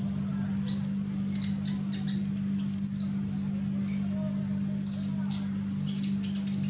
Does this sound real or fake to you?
real